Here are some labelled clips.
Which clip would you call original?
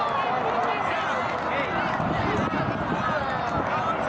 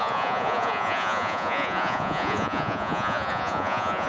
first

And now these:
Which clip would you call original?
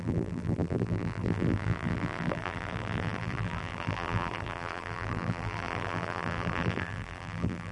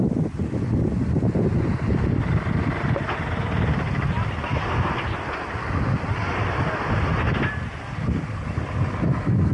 second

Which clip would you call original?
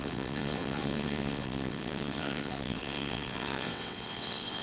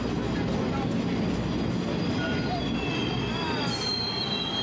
second